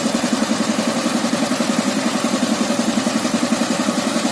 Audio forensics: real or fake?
fake